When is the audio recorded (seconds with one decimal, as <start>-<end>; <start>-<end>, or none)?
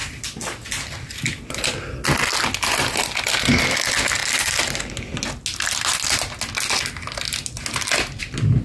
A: 0.0-8.6